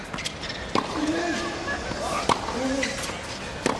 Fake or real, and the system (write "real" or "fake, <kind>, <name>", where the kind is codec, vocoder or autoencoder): real